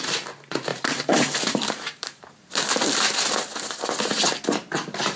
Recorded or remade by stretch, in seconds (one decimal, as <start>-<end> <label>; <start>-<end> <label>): 0.0-0.7 recorded; 0.7-2.2 remade; 2.2-5.2 recorded